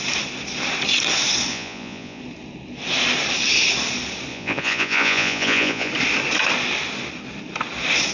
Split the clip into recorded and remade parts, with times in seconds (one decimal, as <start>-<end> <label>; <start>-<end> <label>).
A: 0.0-1.5 recorded; 1.5-2.2 remade; 2.2-4.3 recorded; 4.3-5.9 remade; 5.9-8.1 recorded